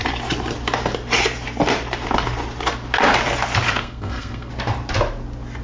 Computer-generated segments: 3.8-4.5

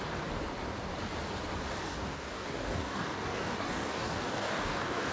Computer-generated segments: 1.8-5.1

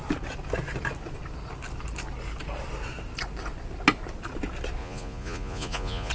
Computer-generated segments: 4.8-6.1

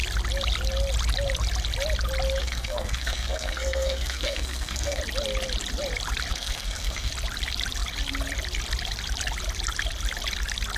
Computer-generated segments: 2.4-5.0; 6.3-7.1

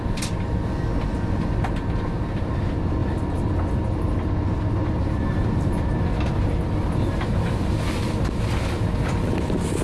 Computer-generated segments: none